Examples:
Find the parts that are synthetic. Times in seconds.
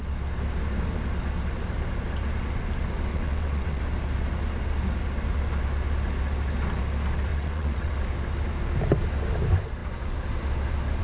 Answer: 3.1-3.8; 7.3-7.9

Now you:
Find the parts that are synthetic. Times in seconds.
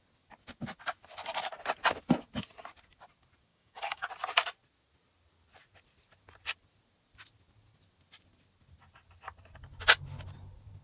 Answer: 3.5-4.1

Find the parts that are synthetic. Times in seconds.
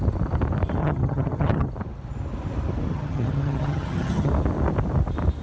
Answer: 0.8-1.7; 2.9-4.3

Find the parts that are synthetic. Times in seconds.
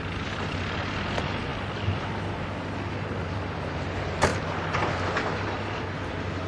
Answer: none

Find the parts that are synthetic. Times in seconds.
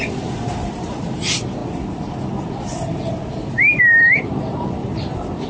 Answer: 0.0-1.6; 3.5-5.5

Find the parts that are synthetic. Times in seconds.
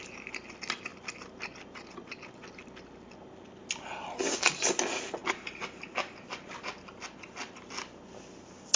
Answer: none